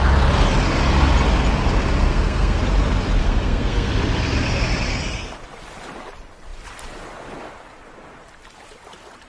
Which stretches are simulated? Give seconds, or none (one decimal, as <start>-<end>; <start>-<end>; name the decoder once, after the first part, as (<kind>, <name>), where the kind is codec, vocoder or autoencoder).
2.1-2.6 (codec, SNAC); 3.2-3.9